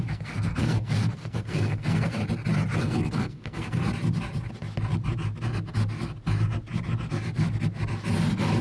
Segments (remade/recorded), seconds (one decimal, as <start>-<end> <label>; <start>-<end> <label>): 0.0-2.2 remade; 2.2-2.8 recorded; 2.8-3.8 remade; 3.8-8.6 recorded